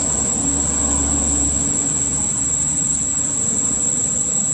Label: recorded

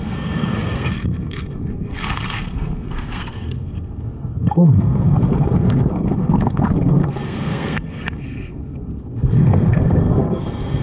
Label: remade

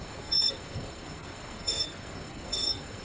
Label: remade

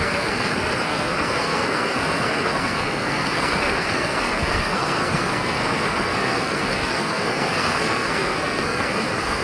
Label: remade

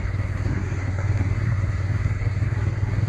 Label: remade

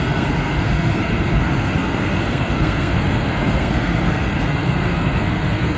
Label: remade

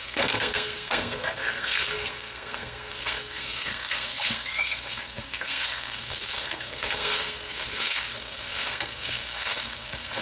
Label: remade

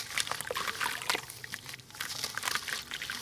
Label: recorded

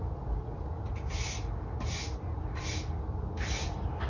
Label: recorded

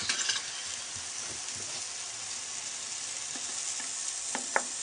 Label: recorded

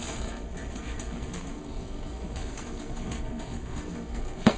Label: remade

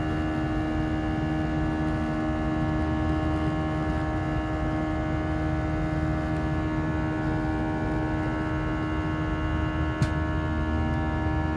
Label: recorded